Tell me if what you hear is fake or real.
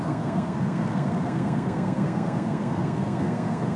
fake